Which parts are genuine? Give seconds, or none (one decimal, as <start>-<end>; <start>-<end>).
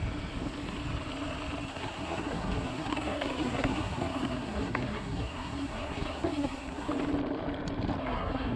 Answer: 0.0-1.7; 6.9-8.0